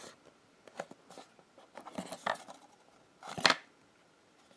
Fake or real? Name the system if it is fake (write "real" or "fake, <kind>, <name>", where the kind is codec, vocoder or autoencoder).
real